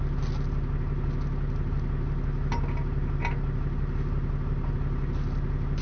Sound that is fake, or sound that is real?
real